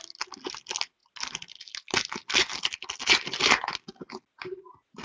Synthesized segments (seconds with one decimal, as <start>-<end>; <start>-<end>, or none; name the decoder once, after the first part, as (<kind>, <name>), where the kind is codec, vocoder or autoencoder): none